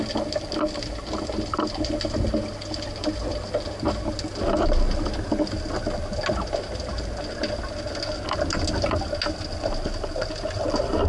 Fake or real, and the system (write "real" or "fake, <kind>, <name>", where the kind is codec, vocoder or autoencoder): real